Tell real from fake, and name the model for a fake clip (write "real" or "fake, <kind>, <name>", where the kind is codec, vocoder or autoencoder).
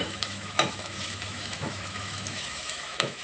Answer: fake, autoencoder, DAC-VAE